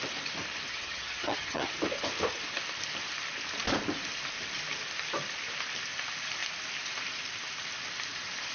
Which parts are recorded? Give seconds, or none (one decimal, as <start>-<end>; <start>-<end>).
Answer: 0.0-0.7; 1.7-8.5